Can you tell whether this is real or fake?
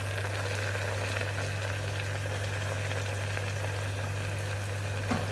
real